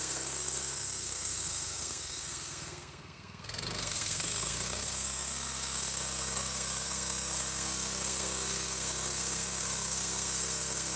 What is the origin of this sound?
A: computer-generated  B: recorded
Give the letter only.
A